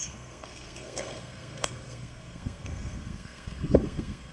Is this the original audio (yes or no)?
no